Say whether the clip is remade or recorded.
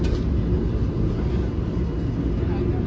recorded